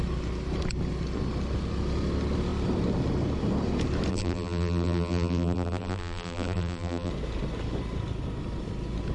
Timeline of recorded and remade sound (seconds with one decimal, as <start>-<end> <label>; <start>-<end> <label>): 0.0-4.1 recorded; 4.1-7.1 remade; 7.1-9.1 recorded

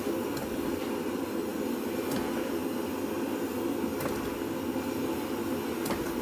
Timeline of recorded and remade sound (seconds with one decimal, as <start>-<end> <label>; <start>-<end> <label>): 0.0-6.2 recorded

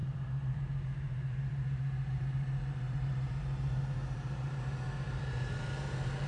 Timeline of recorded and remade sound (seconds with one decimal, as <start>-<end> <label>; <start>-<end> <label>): 0.0-6.3 remade

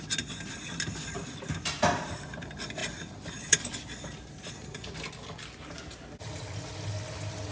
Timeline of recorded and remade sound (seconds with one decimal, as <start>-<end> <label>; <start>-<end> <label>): 0.0-2.8 recorded; 2.8-3.7 remade; 3.7-7.5 recorded

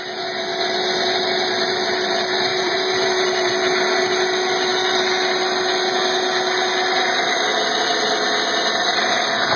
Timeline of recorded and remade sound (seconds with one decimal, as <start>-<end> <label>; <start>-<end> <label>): 0.0-2.5 recorded; 2.5-3.5 remade; 3.5-9.6 recorded

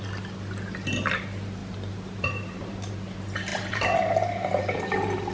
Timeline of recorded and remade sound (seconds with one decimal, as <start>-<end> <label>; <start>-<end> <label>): 0.0-1.6 recorded; 1.6-2.9 remade; 2.9-3.5 recorded; 3.5-5.3 remade

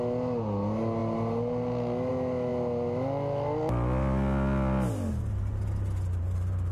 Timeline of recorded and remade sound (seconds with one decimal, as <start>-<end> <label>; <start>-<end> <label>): 0.0-6.7 recorded

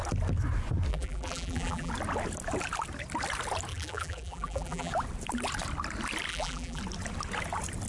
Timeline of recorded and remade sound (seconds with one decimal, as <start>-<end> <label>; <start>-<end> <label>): 0.0-0.9 recorded; 0.9-1.9 remade; 1.9-3.7 recorded; 3.7-4.9 remade; 4.9-6.3 recorded; 6.3-6.8 remade; 6.8-7.9 recorded